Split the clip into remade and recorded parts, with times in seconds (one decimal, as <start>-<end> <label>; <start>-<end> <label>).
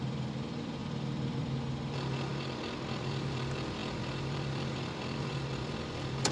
0.0-2.3 remade; 2.3-3.0 recorded; 3.0-6.3 remade